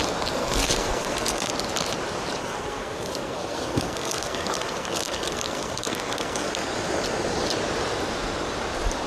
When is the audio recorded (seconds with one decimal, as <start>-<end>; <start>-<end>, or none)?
0.0-0.4; 1.5-2.4; 6.5-9.1